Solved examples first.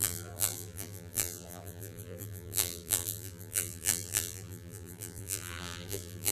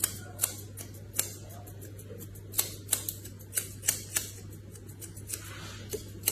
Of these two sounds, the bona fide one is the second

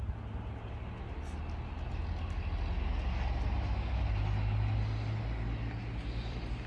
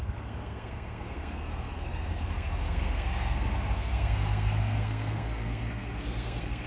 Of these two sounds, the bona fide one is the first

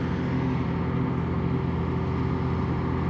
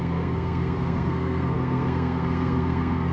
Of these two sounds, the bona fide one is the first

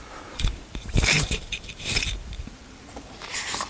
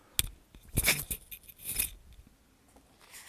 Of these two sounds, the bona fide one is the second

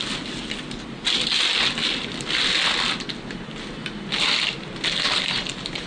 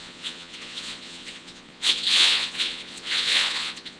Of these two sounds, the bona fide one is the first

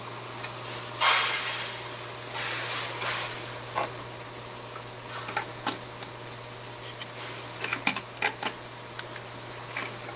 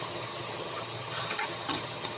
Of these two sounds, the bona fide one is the first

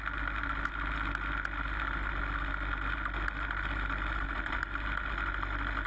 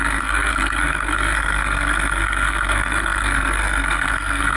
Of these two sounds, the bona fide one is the first